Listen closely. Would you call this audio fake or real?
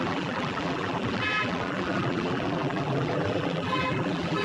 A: fake